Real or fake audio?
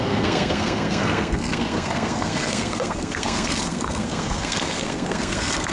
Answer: fake